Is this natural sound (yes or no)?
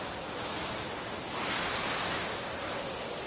yes